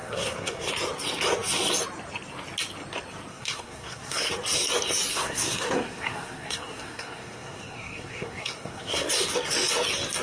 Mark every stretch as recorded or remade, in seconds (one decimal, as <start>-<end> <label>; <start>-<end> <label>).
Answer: 0.0-0.7 remade; 0.7-3.3 recorded; 3.3-4.3 remade; 4.3-5.1 recorded; 5.1-9.1 remade; 9.1-10.2 recorded